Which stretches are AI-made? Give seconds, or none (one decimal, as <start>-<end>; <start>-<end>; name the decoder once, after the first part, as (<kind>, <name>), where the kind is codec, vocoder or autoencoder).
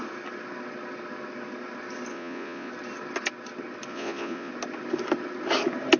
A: 2.1-2.7 (vocoder, Vocos); 3.9-4.5